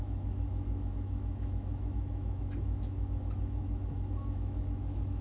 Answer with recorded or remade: remade